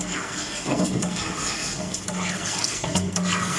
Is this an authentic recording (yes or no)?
no